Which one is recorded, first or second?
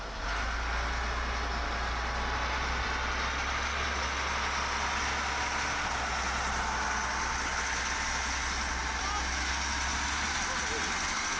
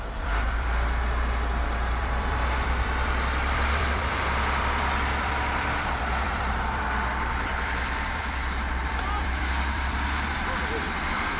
first